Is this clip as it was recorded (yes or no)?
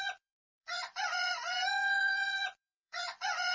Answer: no